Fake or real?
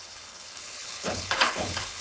fake